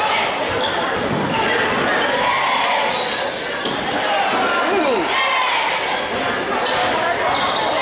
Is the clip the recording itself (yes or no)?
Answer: yes